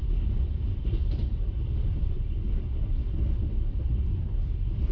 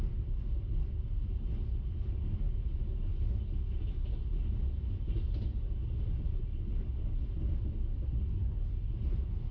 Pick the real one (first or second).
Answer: second